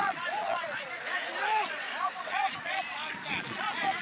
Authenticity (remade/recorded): remade